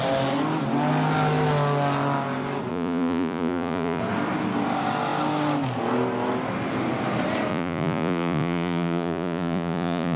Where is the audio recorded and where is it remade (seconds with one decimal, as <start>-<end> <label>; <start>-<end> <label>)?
0.0-2.7 recorded; 2.7-4.0 remade; 4.0-7.5 recorded; 7.5-10.2 remade